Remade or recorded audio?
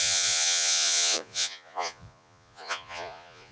remade